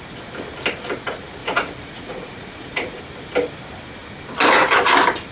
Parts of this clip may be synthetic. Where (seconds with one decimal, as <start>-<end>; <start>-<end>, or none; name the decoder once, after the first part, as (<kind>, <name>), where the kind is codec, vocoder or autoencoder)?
1.4-3.0 (vocoder, Vocos)